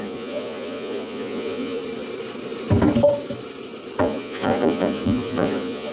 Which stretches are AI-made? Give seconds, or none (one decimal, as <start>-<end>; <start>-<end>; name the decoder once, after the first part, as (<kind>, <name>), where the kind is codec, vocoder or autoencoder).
0.0-1.8 (vocoder, Vocos); 4.0-5.9